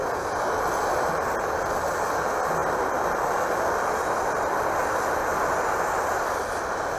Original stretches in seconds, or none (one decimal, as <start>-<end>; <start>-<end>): 0.0-7.0